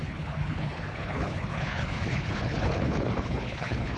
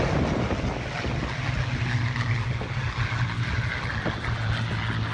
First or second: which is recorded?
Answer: second